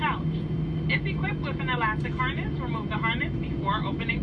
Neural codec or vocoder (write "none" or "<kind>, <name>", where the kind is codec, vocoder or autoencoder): none